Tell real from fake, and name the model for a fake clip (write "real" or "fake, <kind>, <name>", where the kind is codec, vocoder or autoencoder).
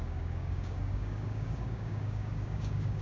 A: fake, codec, DAC